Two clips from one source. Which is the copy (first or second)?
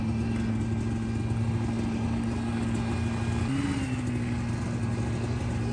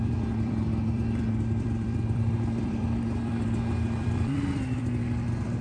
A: second